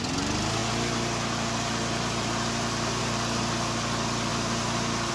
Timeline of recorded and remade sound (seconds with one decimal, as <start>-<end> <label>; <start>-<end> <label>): 0.0-0.6 recorded; 0.6-3.0 remade; 3.0-4.3 recorded; 4.3-5.1 remade